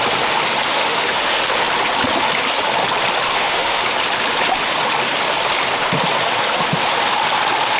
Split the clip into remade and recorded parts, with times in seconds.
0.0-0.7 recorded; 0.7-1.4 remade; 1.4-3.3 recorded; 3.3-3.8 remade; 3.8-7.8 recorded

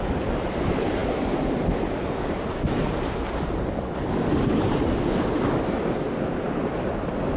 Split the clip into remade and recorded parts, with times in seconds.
0.0-7.4 recorded

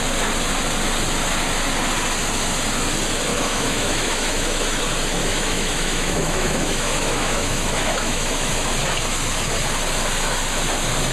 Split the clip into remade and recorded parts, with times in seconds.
0.0-3.3 recorded; 3.3-4.8 remade; 4.8-5.2 recorded; 5.2-8.5 remade; 8.5-11.1 recorded

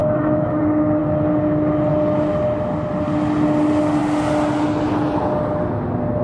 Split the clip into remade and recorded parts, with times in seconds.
0.0-0.6 remade; 0.6-6.2 recorded

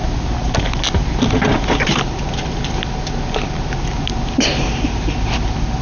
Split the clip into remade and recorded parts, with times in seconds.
0.0-5.8 recorded